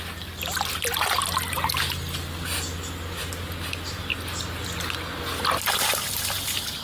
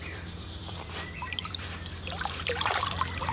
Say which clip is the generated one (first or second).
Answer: second